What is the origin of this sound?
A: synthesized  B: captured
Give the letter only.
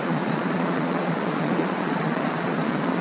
A